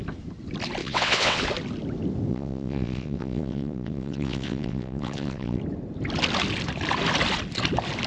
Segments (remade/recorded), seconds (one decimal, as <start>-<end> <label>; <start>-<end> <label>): 0.0-0.8 recorded; 0.8-1.4 remade; 1.4-2.3 recorded; 2.3-5.6 remade; 5.6-8.1 recorded

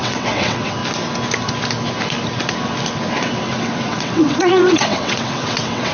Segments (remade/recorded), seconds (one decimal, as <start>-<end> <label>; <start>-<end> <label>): 0.0-0.8 remade; 0.8-3.2 recorded; 3.2-5.9 remade